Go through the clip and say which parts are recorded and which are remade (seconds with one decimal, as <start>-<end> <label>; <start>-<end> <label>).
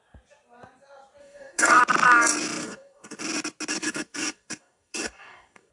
0.0-1.2 recorded; 1.2-1.8 remade; 1.8-2.6 recorded; 2.6-3.2 remade; 3.2-3.7 recorded; 3.7-5.7 remade